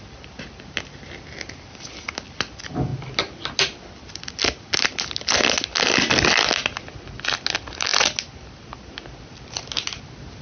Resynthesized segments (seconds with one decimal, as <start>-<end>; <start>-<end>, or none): none

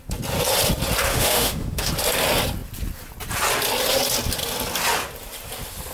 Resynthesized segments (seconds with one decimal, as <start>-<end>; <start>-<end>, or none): 1.1-1.9

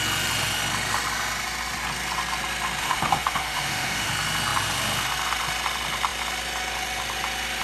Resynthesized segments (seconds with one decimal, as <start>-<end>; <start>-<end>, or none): 2.8-4.1